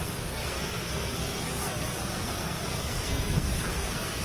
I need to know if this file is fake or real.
fake